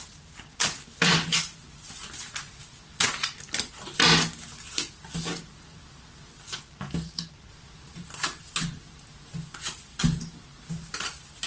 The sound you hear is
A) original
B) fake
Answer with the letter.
B